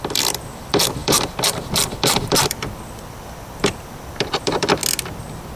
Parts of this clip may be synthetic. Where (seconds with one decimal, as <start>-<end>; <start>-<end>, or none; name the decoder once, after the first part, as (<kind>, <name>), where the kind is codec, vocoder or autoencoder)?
0.0-4.8 (vocoder, BigVGAN v2)